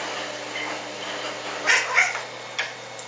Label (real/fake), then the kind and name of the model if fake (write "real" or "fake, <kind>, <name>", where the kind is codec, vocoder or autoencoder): real